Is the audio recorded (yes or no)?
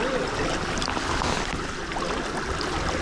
yes